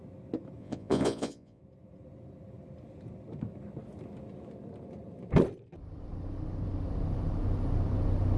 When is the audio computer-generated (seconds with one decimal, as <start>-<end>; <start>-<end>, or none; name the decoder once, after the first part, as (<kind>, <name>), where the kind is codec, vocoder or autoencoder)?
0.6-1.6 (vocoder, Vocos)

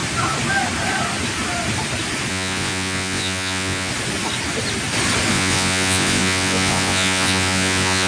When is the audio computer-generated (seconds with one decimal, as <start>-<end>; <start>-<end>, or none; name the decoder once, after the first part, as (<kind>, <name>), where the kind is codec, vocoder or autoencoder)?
2.3-3.9 (vocoder, Vocos); 5.3-8.1

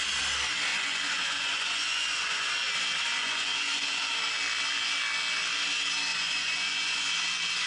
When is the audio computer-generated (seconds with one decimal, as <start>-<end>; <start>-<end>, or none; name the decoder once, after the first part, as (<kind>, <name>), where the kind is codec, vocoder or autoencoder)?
0.7-2.5 (vocoder, Vocos); 3.2-4.1; 6.1-7.1

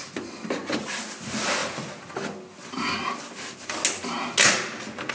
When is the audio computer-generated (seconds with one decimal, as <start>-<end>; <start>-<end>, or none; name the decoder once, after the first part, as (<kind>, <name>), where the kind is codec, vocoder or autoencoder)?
none

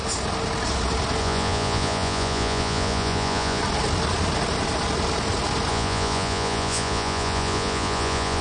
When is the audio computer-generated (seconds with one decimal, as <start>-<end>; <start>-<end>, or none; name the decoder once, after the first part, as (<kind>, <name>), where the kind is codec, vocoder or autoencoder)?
1.2-3.6 (vocoder, Vocos); 5.7-8.4

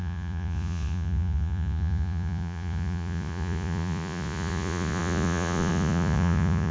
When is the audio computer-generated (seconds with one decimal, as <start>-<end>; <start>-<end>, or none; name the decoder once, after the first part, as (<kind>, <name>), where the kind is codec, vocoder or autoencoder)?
0.0-6.7 (vocoder, Vocos)

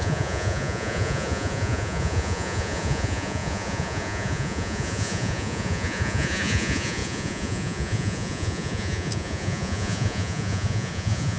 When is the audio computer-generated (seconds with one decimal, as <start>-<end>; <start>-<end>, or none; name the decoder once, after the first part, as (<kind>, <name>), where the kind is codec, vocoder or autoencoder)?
0.0-11.4 (vocoder, Vocos)